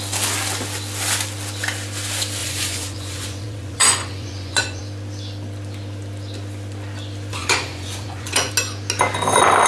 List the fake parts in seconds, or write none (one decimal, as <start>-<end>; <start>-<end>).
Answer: 2.4-4.8; 7.4-8.5